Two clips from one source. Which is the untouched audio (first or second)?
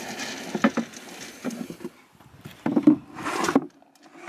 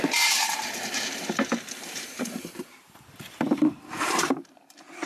first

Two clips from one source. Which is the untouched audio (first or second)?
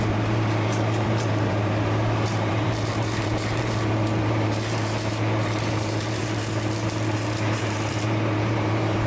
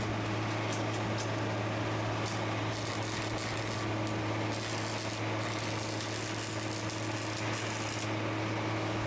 second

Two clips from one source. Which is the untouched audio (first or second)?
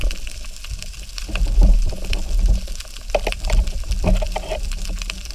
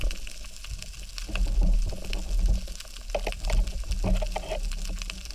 second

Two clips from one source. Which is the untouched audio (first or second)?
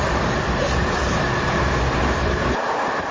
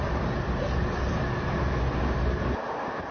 second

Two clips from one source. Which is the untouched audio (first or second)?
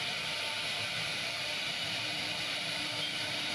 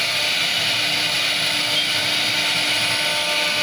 second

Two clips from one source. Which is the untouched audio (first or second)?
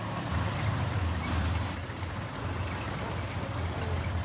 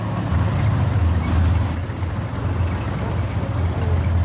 second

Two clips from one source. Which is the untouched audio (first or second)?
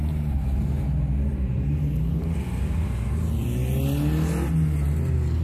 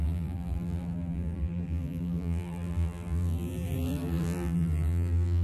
first